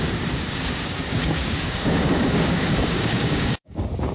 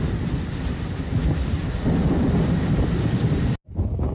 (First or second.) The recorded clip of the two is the second